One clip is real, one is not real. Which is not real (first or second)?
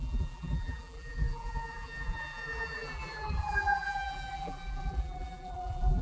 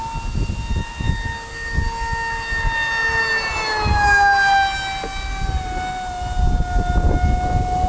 first